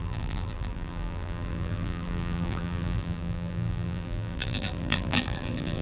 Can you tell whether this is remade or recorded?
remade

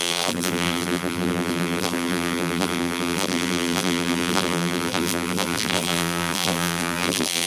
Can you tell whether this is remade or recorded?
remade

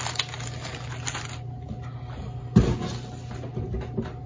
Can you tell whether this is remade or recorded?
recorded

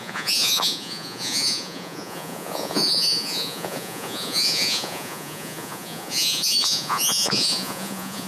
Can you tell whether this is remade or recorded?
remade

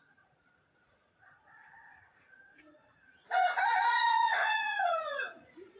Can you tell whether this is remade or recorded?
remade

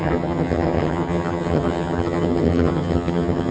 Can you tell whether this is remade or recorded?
remade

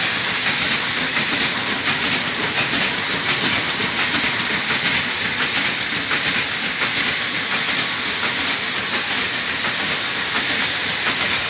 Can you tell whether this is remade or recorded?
recorded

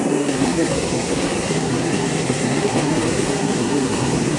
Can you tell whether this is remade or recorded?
remade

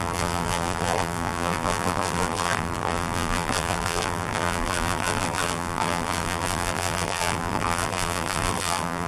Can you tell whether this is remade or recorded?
remade